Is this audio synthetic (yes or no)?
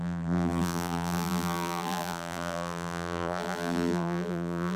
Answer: yes